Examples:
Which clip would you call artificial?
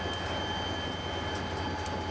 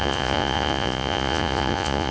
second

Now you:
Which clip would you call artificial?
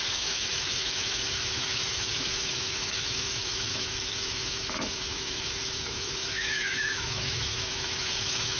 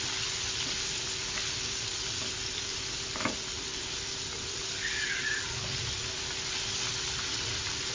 first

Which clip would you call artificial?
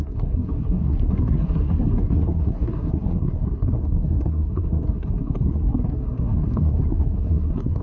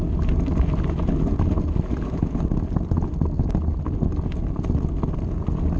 first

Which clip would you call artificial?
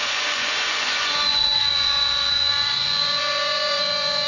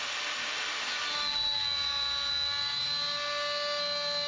first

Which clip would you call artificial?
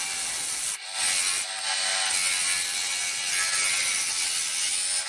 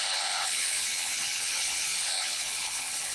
second